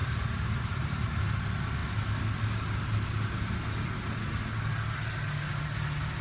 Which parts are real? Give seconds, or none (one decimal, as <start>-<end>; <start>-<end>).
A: 1.2-6.2